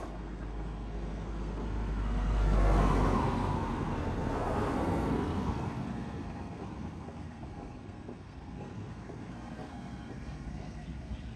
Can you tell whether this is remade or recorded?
remade